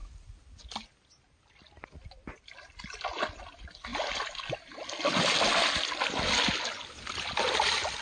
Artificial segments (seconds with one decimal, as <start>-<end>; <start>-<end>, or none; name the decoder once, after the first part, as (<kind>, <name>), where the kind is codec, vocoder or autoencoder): none